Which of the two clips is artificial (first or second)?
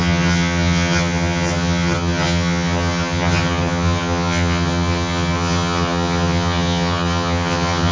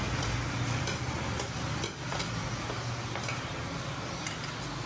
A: first